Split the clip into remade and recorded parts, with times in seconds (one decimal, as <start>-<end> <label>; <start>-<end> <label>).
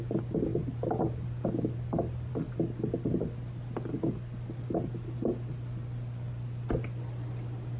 0.0-7.8 recorded